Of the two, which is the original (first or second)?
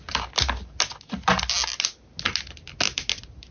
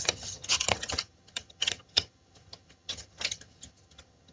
first